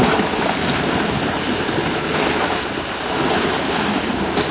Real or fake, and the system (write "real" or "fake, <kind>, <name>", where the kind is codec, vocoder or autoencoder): real